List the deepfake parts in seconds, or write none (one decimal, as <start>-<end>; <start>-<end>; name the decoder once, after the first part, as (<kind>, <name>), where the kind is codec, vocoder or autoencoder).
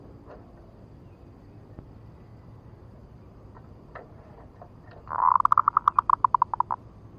2.3-5.4 (vocoder, BigVGAN v2)